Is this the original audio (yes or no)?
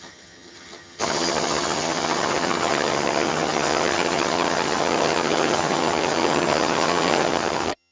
no